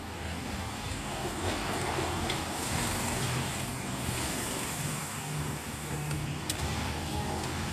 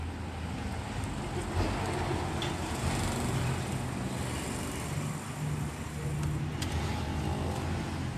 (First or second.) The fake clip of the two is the first